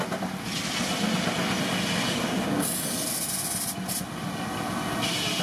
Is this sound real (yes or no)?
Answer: yes